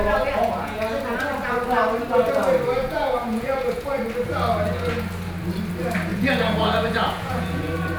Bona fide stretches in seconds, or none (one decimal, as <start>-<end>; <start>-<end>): 0.8-2.8; 4.0-6.1; 7.6-8.0